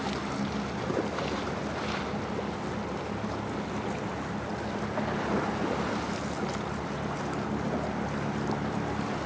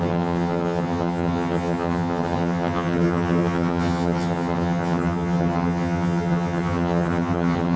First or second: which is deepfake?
second